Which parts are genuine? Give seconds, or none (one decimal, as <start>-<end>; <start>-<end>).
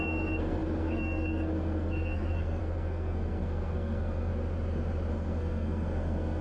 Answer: 4.3-5.1